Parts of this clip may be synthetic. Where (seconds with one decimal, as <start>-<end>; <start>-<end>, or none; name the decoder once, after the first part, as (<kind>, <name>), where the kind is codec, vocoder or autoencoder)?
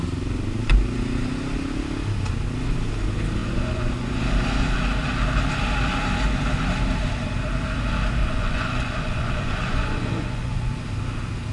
3.4-4.2 (vocoder, Vocos); 8.2-10.7